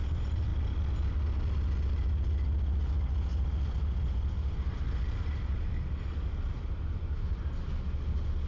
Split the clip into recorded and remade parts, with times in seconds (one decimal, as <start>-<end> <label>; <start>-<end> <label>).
0.0-8.5 recorded